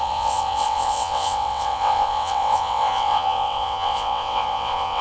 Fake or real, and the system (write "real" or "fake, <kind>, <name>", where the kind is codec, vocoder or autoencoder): fake, vocoder, WaveNeXt